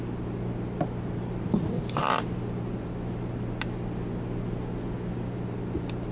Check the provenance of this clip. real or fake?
real